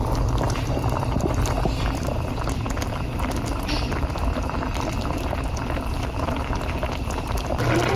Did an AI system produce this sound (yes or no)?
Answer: yes